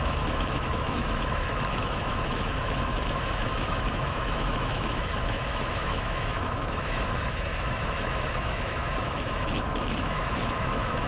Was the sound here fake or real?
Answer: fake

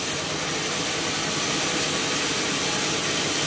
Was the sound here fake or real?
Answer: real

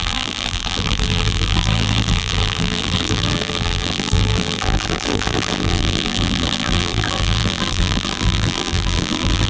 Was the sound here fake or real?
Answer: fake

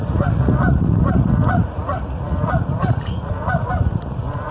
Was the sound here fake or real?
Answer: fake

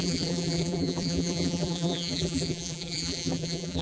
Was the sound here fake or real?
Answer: fake